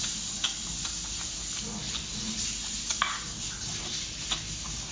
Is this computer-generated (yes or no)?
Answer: no